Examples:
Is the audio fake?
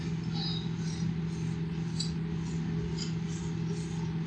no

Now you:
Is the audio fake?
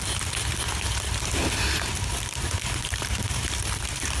no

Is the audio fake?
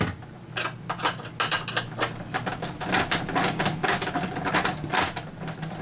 no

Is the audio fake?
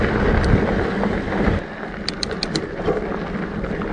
no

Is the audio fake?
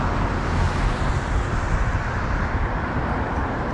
no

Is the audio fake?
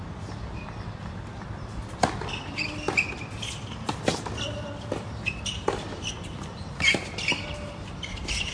no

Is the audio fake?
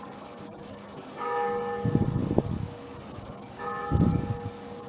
yes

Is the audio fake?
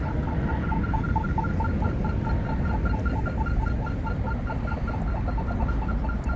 no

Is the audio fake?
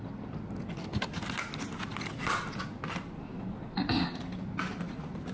no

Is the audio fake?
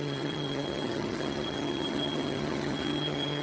yes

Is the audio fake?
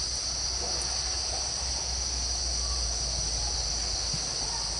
no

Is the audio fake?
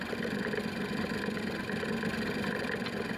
no